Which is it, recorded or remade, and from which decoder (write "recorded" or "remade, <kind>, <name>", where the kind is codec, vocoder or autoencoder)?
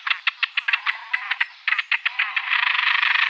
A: remade, vocoder, BigVGAN v2